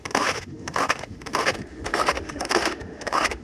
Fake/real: fake